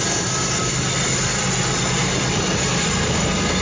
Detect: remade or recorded recorded